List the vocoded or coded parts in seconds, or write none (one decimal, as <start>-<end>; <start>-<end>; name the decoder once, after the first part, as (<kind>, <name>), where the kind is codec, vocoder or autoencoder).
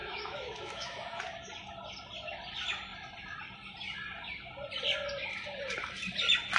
0.0-1.2 (autoencoder, DAC-VAE)